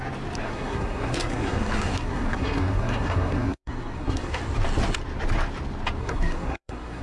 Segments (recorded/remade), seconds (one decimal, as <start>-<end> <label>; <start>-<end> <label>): 0.0-0.4 recorded; 0.4-4.4 remade; 4.4-6.0 recorded; 6.0-7.0 remade